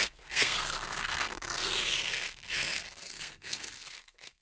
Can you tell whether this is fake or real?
fake